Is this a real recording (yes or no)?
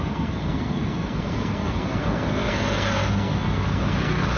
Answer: no